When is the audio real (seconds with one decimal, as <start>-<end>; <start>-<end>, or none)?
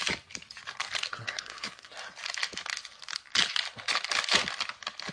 0.0-1.1; 1.9-5.1